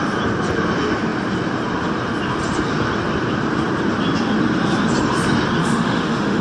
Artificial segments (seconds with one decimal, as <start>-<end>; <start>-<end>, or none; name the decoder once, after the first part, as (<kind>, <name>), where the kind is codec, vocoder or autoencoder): 5.6-6.4 (autoencoder, DAC-VAE)